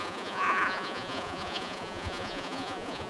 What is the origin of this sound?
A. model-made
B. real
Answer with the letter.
A